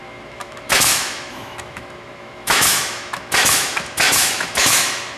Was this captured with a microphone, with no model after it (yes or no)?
no